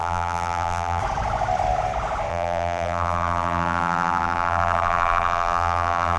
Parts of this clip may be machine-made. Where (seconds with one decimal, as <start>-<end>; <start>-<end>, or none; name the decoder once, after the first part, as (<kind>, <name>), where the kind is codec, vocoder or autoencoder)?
0.0-1.0 (vocoder, BigVGAN v2); 2.3-6.2

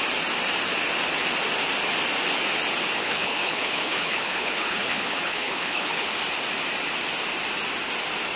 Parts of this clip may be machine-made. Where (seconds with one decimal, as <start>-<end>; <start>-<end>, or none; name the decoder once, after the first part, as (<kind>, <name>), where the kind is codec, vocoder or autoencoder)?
3.0-6.2 (codec, HILCodec)

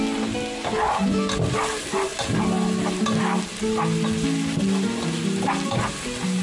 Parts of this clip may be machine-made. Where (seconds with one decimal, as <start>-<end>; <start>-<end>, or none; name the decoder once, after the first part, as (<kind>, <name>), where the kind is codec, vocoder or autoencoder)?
none

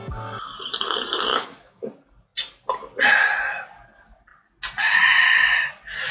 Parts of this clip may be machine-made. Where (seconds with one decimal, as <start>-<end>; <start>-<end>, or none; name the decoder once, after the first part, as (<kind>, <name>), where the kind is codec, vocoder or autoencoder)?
1.3-1.9 (autoencoder, DAC-VAE)